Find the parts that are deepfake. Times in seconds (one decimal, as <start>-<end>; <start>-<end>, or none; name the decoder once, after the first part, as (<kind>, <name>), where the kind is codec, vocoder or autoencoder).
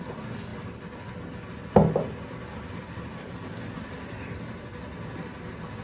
none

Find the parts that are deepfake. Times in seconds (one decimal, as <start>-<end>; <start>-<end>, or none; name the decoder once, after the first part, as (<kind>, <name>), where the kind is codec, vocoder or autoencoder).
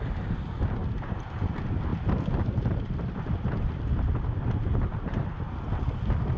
none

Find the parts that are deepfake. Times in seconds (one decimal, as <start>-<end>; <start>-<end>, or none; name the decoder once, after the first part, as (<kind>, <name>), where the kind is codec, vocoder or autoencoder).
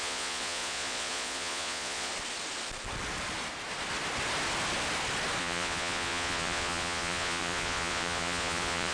0.0-2.1 (vocoder, Vocos); 5.4-8.9